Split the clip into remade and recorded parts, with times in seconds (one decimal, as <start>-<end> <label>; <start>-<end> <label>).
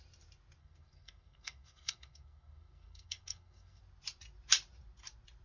0.0-0.6 recorded; 0.6-3.8 remade; 3.8-5.4 recorded